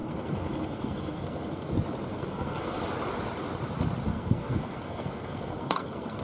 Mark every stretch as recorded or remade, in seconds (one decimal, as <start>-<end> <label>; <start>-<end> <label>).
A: 0.0-1.7 remade; 1.7-2.1 recorded; 2.1-2.8 remade; 2.8-4.1 recorded; 4.1-6.2 remade